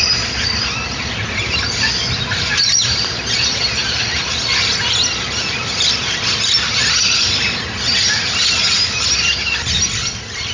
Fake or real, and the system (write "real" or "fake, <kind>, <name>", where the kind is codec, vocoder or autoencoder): real